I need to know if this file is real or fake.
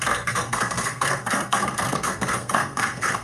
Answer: fake